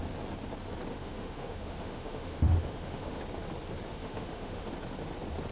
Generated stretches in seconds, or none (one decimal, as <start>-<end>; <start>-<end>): 0.9-3.2; 3.9-4.7